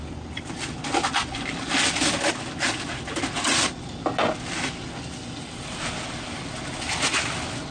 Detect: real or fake real